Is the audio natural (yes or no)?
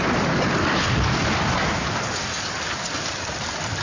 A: yes